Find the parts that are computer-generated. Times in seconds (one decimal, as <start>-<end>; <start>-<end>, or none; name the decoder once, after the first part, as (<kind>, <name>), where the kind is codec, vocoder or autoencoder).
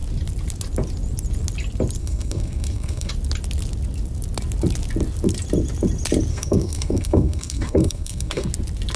2.0-3.1 (codec, SNAC); 6.3-8.5